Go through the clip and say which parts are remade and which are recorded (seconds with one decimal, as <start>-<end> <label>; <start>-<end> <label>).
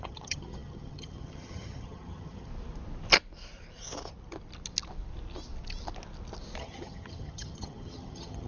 0.0-2.5 remade; 2.5-6.6 recorded; 6.6-8.5 remade